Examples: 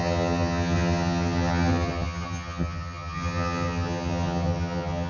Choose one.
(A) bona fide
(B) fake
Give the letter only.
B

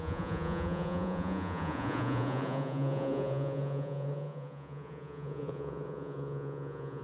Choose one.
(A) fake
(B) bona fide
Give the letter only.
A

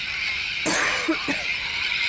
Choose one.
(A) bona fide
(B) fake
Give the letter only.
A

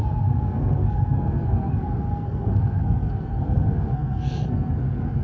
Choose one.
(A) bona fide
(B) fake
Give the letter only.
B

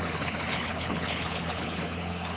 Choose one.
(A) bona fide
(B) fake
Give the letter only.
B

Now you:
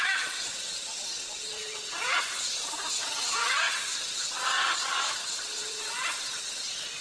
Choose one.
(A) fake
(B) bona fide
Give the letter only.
A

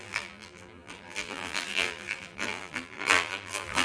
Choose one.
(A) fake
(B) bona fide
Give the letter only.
A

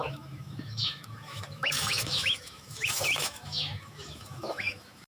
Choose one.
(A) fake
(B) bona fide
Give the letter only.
A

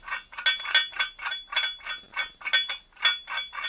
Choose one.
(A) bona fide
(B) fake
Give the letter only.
A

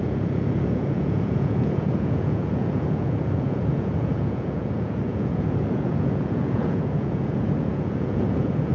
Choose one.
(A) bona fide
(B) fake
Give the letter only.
B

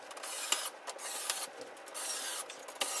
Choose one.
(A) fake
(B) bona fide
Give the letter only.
B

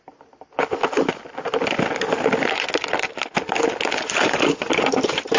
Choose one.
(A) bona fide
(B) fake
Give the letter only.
A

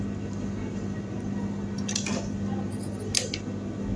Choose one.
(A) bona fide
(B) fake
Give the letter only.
A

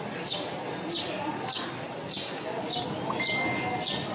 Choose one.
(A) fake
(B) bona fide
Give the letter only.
B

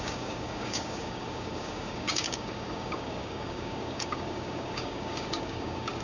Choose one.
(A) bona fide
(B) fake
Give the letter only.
B